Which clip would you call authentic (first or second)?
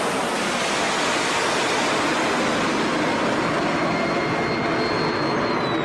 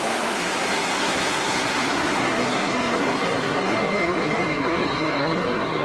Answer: first